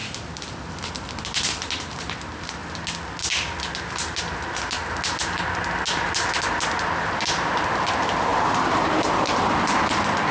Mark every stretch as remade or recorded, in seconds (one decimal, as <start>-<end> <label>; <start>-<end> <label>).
0.0-8.3 recorded; 8.3-9.8 remade; 9.8-10.3 recorded